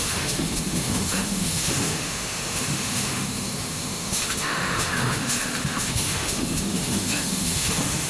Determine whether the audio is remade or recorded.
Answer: remade